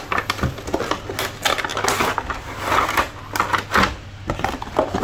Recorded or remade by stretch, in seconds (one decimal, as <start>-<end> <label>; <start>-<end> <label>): 0.0-5.0 recorded